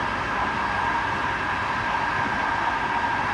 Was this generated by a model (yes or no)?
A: no